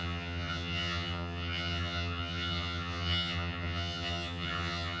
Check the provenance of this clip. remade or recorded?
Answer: remade